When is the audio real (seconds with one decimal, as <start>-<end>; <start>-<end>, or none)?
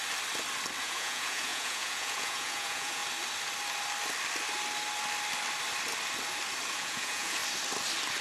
0.0-0.8; 3.0-6.7; 7.4-8.2